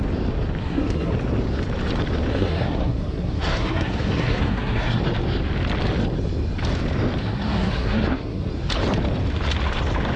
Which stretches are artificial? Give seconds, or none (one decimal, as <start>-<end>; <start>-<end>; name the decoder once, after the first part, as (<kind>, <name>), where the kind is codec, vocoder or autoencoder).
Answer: 0.6-1.1 (codec, SNAC); 2.3-5.0; 7.2-8.5